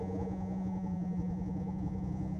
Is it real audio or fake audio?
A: fake